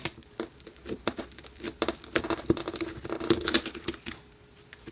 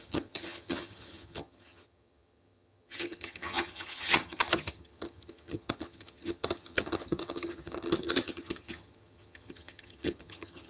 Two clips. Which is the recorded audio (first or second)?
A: first